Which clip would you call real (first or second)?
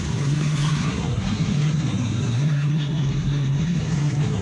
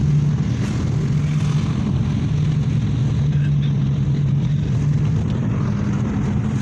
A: second